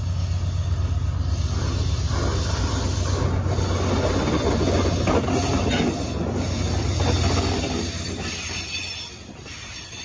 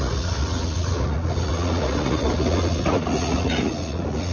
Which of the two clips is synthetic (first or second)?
second